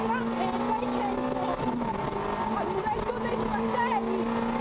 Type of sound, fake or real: real